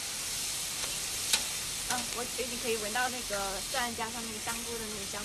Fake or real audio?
real